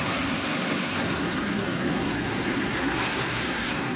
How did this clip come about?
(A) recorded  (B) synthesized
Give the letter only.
B